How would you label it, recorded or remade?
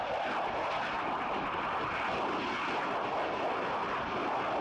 recorded